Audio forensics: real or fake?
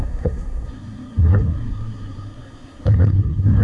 fake